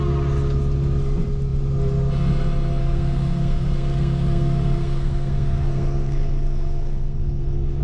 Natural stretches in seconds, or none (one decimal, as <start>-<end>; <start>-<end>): 0.0-2.8